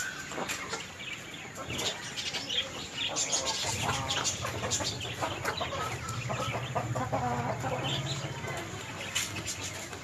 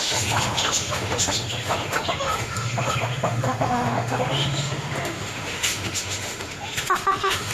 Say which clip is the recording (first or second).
first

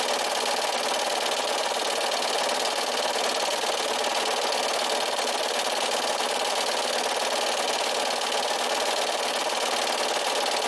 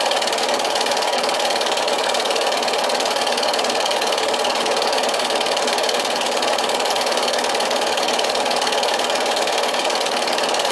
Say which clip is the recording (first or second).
first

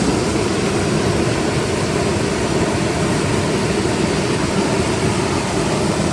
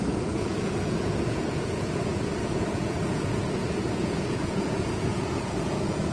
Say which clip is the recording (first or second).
first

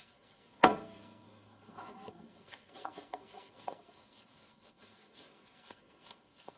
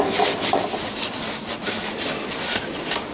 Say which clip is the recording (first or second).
second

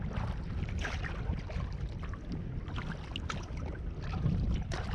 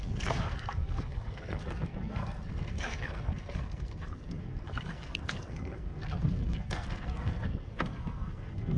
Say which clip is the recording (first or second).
first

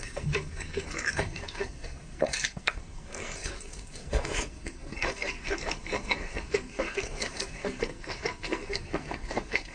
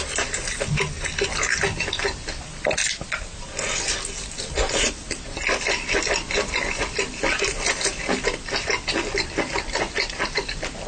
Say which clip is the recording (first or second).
second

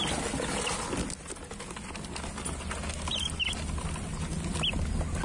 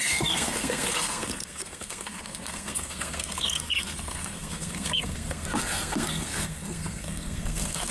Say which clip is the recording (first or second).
first